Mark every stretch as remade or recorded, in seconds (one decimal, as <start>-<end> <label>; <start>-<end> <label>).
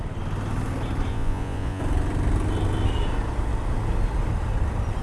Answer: 0.0-1.1 recorded; 1.1-1.8 remade; 1.8-5.0 recorded